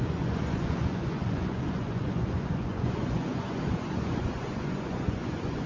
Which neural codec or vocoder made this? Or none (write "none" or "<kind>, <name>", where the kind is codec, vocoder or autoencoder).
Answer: vocoder, Vocos